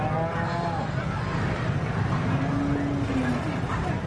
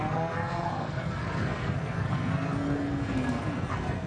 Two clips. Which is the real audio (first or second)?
first